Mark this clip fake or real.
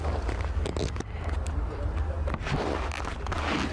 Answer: real